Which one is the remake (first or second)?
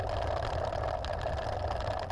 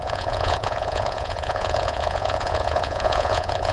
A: second